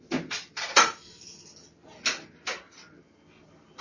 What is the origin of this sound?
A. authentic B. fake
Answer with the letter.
A